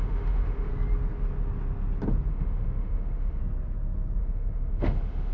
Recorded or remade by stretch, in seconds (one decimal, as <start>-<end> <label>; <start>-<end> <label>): 0.0-0.7 remade; 0.7-2.3 recorded; 2.3-3.4 remade; 3.4-4.2 recorded; 4.2-5.3 remade